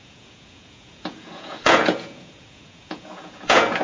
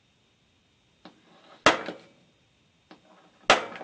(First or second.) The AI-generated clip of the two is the first